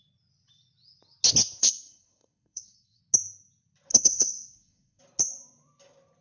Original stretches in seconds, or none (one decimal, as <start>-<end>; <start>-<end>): 0.0-1.6; 3.0-3.9; 5.0-6.2